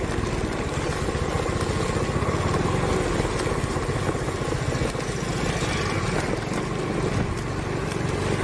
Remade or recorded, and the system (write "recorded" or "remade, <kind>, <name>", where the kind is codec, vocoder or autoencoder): recorded